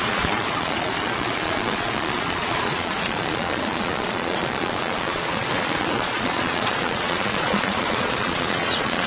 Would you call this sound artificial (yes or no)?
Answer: yes